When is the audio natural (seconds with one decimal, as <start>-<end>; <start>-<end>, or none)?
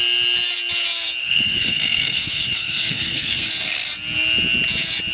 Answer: 0.0-1.2; 3.5-5.1